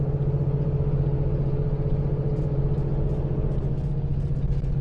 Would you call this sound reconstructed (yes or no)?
no